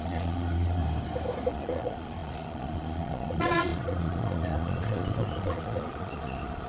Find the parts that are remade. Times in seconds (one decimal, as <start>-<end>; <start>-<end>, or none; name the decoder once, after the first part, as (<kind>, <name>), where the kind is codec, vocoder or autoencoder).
0.0-0.8 (vocoder, Vocos); 1.5-6.7